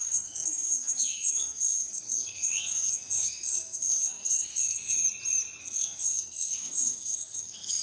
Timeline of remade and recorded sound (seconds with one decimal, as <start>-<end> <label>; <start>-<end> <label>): 0.0-5.0 remade; 5.0-5.6 recorded; 5.6-7.8 remade